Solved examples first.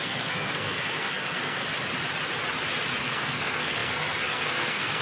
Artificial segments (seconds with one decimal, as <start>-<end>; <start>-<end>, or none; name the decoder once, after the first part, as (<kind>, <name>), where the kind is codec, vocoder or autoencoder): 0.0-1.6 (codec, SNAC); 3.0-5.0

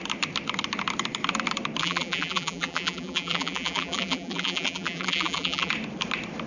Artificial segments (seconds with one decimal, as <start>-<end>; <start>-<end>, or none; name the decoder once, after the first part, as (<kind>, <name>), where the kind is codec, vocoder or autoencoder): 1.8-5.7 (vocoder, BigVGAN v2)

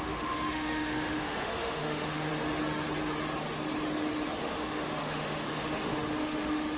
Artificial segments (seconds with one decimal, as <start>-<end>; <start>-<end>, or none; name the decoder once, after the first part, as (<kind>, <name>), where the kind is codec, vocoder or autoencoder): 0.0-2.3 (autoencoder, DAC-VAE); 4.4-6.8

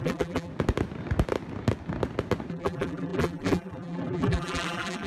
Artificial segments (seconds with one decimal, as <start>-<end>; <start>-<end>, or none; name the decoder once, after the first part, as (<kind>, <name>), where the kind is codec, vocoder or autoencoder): 0.0-0.5 (vocoder, BigVGAN v2); 2.5-5.1